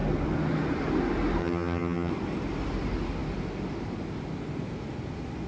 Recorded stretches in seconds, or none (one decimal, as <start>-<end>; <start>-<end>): 0.0-1.4; 2.1-5.5